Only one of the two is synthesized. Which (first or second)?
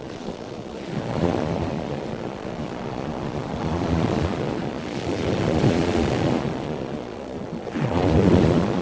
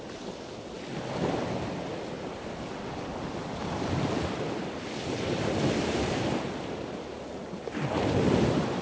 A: first